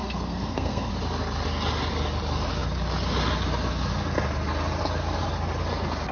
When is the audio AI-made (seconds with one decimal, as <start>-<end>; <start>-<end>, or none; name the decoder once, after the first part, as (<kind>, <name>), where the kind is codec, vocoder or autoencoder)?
0.0-0.9 (codec, SNAC)